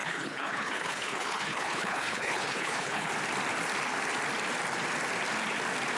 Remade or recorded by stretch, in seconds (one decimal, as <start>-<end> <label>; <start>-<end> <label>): 0.0-3.1 remade; 3.1-6.0 recorded